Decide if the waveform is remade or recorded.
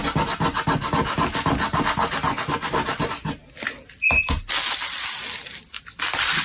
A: recorded